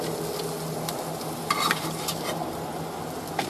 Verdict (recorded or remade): recorded